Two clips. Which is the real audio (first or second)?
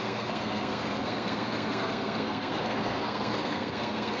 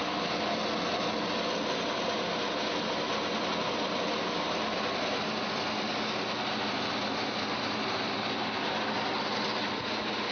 second